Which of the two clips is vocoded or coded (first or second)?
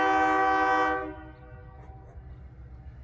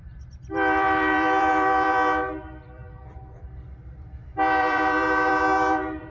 second